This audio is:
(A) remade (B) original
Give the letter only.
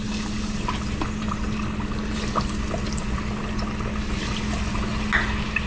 B